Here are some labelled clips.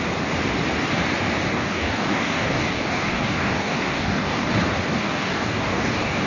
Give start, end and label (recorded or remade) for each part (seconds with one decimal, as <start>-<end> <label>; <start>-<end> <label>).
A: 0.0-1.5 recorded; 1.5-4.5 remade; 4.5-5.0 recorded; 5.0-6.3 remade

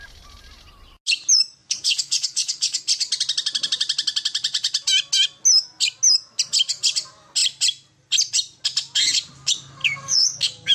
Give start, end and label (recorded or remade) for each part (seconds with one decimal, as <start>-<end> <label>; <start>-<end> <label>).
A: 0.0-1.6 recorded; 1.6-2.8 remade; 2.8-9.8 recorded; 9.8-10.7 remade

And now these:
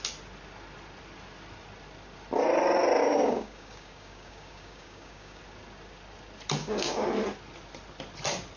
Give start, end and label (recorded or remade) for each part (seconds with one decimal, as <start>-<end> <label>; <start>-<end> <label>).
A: 0.0-3.0 recorded; 3.0-5.4 remade; 5.4-6.6 recorded; 6.6-7.1 remade; 7.1-8.6 recorded